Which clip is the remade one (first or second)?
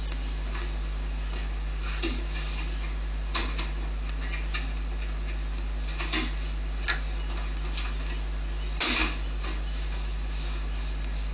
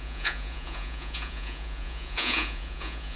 second